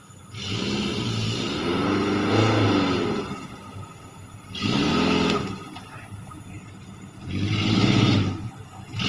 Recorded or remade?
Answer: recorded